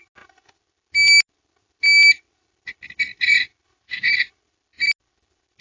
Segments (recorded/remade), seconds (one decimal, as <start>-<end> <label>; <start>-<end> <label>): 0.0-5.6 recorded